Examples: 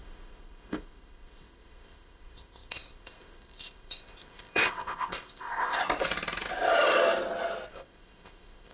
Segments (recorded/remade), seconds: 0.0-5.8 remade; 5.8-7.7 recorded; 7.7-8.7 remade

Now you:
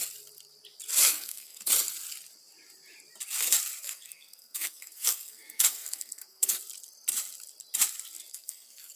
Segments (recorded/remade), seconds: 0.0-1.0 recorded; 1.0-1.7 remade; 1.7-3.8 recorded; 3.8-6.6 remade; 6.6-8.3 recorded; 8.3-9.0 remade

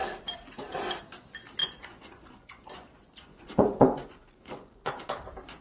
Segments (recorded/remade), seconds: 0.0-1.6 recorded; 1.6-4.9 remade; 4.9-5.6 recorded

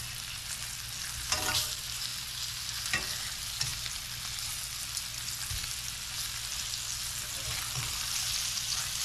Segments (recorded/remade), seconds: 0.0-9.0 recorded

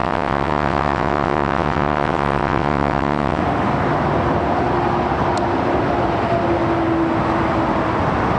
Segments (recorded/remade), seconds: 0.0-3.4 remade; 3.4-8.4 recorded